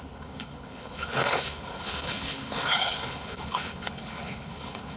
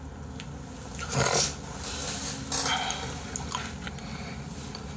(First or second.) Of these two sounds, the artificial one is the first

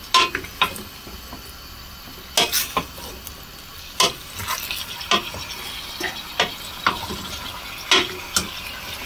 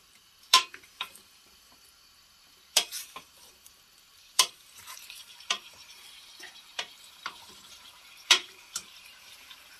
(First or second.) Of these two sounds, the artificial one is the second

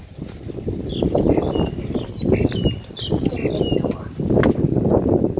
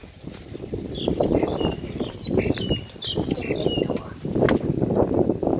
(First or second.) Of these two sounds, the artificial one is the second